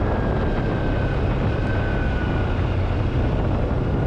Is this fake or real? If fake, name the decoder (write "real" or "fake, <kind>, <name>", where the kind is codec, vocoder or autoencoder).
real